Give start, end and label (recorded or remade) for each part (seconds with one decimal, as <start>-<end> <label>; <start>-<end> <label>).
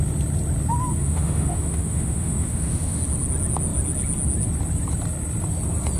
0.0-0.9 recorded; 0.9-3.0 remade; 3.0-6.0 recorded